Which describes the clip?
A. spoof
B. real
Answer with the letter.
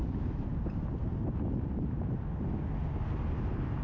B